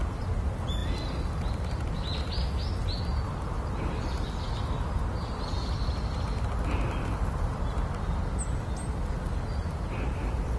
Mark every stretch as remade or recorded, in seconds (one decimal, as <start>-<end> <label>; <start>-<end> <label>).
0.0-10.6 recorded

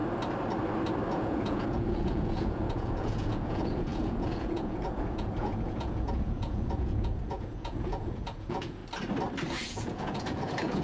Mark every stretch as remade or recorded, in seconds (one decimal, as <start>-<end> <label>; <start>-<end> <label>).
0.0-1.1 recorded; 1.1-8.8 remade; 8.8-9.5 recorded; 9.5-10.8 remade

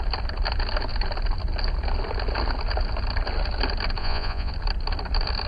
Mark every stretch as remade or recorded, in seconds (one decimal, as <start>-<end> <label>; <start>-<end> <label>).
0.0-4.0 recorded; 4.0-4.5 remade; 4.5-5.5 recorded

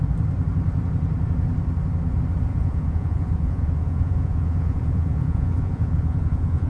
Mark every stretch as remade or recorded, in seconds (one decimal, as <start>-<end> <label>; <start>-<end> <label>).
0.0-2.5 recorded; 2.5-6.7 remade